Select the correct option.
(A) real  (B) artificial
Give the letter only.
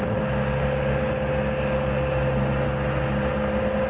A